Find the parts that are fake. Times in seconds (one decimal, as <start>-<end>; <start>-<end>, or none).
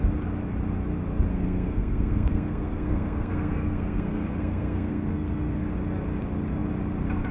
1.3-5.7